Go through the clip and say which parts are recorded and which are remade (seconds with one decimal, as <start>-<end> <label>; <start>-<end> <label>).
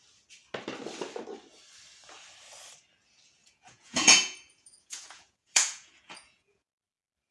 0.0-3.4 recorded; 3.4-6.8 remade; 6.8-7.3 recorded